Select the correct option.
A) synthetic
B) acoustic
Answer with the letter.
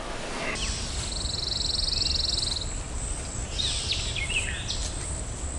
B